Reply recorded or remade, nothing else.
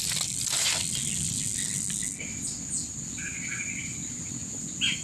recorded